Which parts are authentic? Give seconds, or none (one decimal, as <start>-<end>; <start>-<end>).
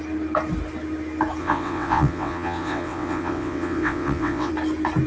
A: 0.0-1.4; 4.5-5.1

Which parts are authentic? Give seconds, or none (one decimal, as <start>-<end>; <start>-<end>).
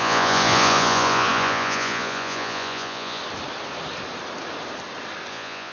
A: 3.2-5.3